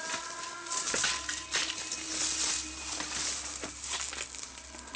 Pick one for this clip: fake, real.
real